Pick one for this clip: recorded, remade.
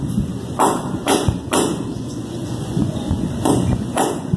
remade